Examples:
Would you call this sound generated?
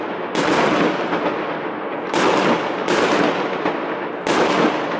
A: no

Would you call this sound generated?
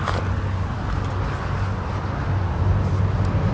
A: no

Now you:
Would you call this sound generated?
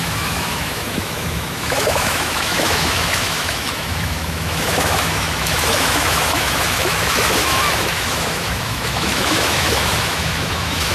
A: yes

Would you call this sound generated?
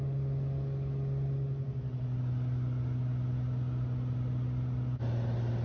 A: no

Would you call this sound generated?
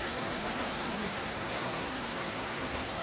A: yes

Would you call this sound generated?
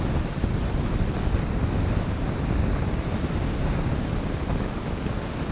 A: no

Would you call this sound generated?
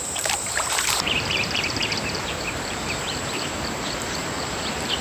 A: yes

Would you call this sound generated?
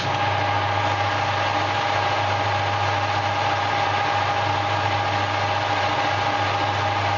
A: no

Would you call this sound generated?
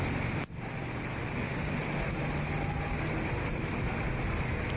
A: no